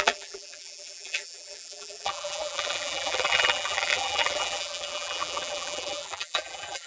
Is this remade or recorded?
remade